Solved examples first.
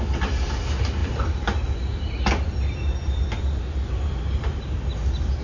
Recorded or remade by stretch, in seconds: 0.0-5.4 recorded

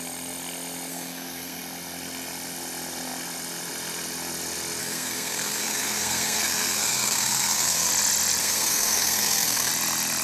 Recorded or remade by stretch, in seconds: 0.0-0.9 recorded; 0.9-1.6 remade; 1.6-4.8 recorded; 4.8-7.9 remade; 7.9-8.4 recorded; 8.4-9.7 remade; 9.7-10.2 recorded

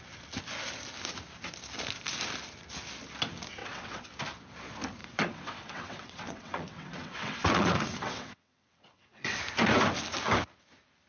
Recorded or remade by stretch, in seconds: 0.0-3.6 recorded; 3.6-4.1 remade; 4.1-5.0 recorded; 5.0-9.4 remade; 9.4-11.1 recorded

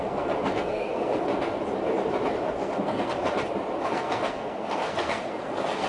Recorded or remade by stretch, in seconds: 0.0-1.3 remade; 1.3-2.5 recorded; 2.5-3.2 remade; 3.2-3.8 recorded; 3.8-5.9 remade

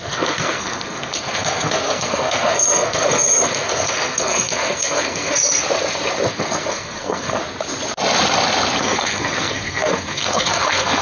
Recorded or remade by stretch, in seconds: 0.0-5.6 remade; 5.6-6.3 recorded; 6.3-7.4 remade; 7.4-8.8 recorded; 8.8-11.0 remade

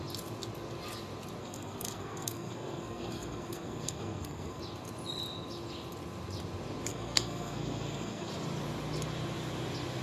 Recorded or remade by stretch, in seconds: 0.0-1.4 recorded; 1.4-4.6 remade; 4.6-6.9 recorded; 6.9-8.3 remade; 8.3-10.0 recorded

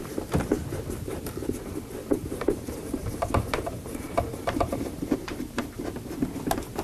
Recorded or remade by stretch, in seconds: 0.0-2.2 recorded; 2.2-5.6 remade; 5.6-6.8 recorded